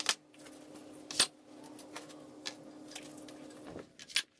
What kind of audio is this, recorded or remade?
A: recorded